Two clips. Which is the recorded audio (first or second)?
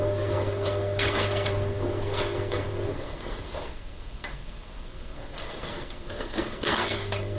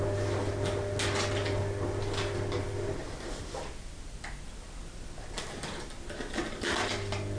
second